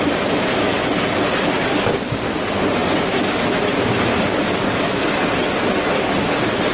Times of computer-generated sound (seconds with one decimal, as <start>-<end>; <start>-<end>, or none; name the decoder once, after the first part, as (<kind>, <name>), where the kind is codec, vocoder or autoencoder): none